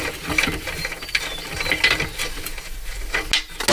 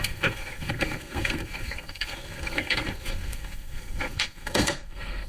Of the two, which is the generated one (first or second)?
second